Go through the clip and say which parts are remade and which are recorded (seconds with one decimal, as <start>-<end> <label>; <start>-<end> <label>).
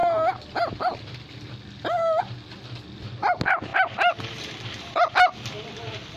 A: 0.0-6.2 recorded